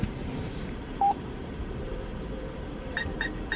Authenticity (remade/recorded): remade